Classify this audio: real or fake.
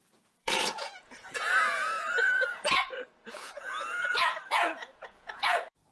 fake